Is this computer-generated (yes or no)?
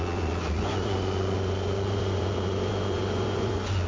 yes